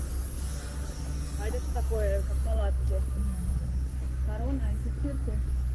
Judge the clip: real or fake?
real